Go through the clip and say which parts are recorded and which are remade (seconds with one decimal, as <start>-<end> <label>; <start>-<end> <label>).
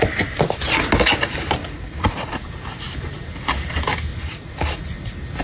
0.0-1.6 recorded; 1.6-2.3 remade; 2.3-4.1 recorded; 4.1-4.8 remade; 4.8-5.4 recorded